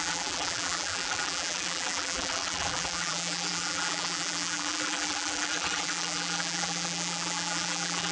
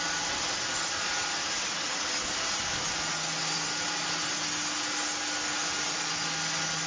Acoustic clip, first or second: second